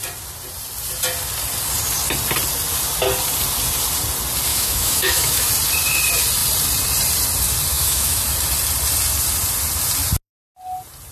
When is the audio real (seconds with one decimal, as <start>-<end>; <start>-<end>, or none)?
0.0-4.5; 5.5-7.7; 8.3-11.1